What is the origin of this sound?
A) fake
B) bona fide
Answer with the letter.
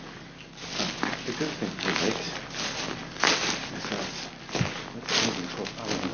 B